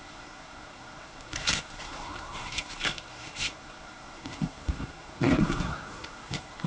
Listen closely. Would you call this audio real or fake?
fake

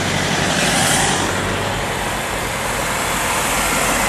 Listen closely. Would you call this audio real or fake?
real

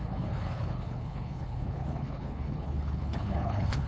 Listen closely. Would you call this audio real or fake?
fake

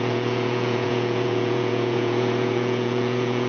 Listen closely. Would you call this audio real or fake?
fake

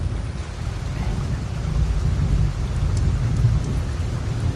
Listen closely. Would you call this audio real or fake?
real